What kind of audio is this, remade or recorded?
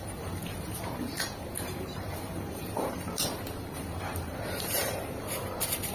remade